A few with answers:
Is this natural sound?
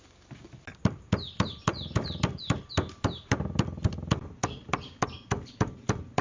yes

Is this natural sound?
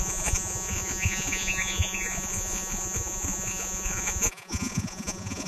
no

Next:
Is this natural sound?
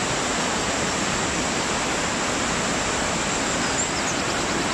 yes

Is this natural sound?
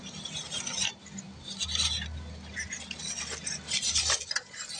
yes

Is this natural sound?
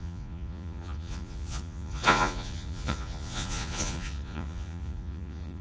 no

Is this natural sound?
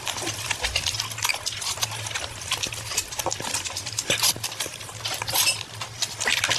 yes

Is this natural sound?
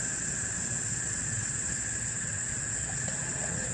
no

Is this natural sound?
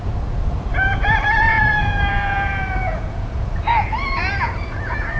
no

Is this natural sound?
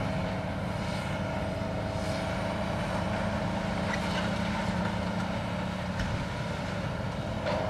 yes